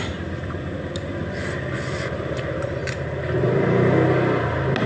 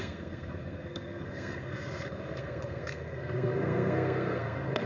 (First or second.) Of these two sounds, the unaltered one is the first